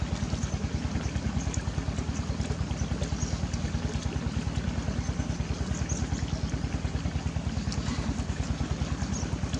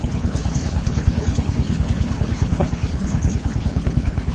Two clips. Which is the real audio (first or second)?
first